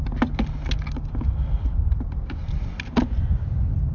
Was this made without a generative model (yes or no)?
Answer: yes